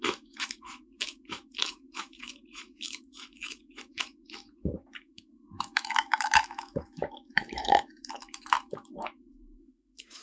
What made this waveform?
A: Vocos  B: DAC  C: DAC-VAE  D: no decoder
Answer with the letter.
C